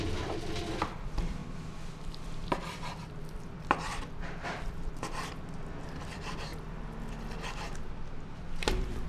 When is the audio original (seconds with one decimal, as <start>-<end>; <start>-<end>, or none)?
6.5-8.7